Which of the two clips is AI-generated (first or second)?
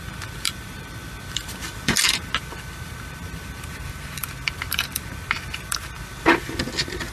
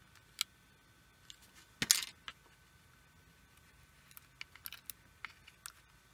first